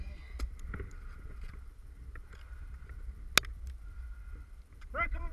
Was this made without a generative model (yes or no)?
yes